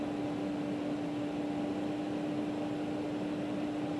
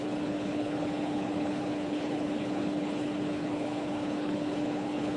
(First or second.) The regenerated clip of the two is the second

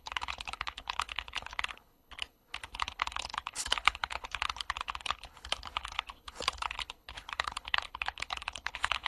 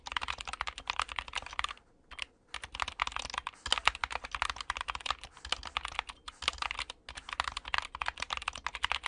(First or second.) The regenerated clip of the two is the first